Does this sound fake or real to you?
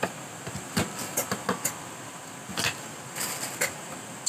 real